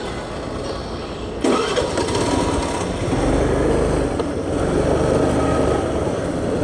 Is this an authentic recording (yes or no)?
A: yes